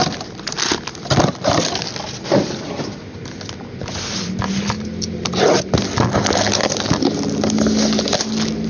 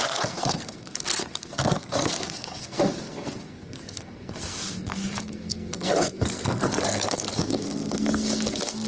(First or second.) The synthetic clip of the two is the second